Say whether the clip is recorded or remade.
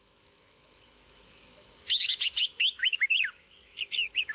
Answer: remade